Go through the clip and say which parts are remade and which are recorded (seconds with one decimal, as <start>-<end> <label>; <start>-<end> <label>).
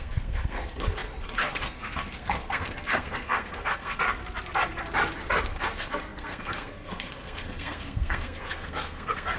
0.0-4.2 remade; 4.2-5.4 recorded; 5.4-9.4 remade